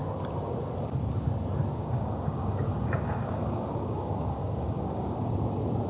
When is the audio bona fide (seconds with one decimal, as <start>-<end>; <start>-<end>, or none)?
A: 0.0-1.8; 5.3-5.9